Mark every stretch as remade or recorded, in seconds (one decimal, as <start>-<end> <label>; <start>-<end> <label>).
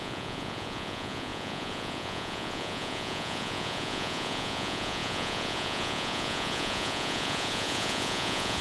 0.0-8.6 remade